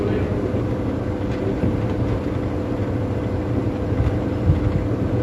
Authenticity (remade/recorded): recorded